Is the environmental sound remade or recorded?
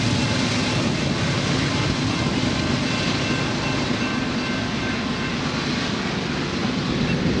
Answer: recorded